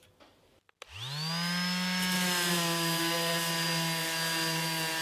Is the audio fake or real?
real